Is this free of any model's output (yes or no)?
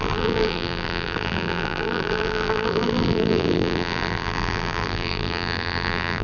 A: no